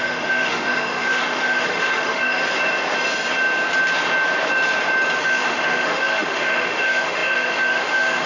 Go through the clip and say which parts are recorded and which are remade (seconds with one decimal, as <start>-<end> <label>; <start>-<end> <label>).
0.0-2.4 remade; 2.4-5.2 recorded; 5.2-8.3 remade